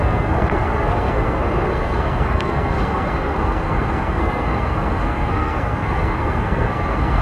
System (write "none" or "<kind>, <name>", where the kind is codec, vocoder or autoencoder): codec, SNAC